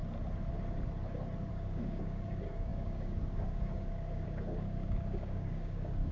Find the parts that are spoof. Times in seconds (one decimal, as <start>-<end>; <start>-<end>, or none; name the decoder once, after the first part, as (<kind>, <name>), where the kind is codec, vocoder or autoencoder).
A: 1.5-6.1 (codec, DAC)